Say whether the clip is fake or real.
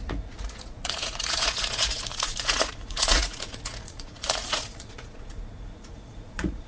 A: fake